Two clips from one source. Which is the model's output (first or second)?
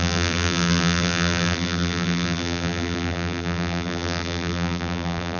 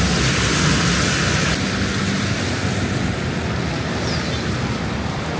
first